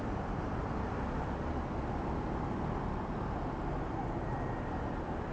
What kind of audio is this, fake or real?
real